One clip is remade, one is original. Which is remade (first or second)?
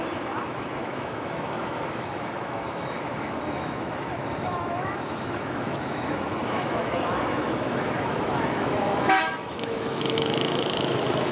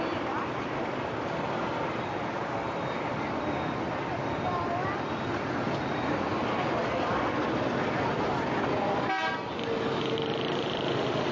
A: first